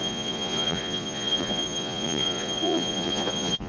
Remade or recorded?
remade